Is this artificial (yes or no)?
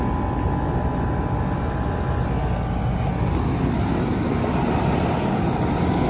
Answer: no